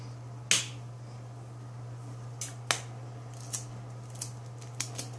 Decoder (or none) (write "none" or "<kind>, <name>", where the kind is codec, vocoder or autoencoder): none